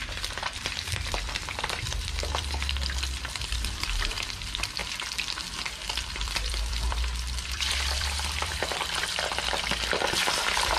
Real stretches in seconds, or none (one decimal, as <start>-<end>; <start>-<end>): 4.8-6.1